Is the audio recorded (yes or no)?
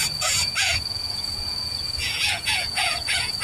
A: no